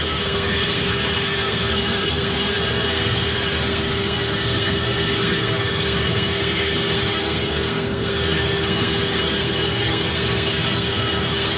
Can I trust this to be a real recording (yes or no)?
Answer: no